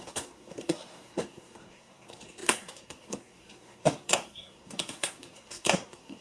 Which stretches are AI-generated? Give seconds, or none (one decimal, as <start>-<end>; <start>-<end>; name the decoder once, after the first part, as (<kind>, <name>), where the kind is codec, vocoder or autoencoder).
0.0-6.2 (codec, SNAC)